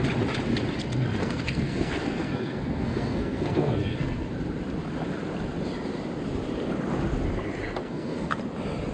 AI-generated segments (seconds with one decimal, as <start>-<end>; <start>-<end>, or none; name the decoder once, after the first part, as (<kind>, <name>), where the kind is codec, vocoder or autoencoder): 1.2-4.3 (codec, SNAC); 7.8-8.4